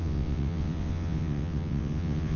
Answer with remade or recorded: remade